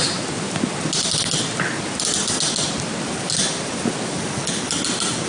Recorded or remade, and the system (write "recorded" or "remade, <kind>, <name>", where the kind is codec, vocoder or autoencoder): recorded